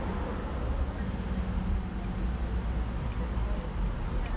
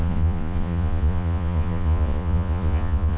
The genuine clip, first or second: first